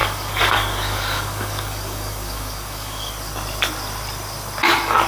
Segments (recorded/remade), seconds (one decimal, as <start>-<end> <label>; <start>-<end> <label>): 0.0-3.1 remade; 3.1-5.1 recorded